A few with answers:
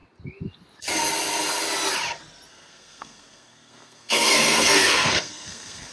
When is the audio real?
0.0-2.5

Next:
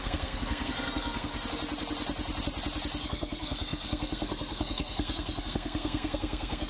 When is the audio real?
1.3-3.0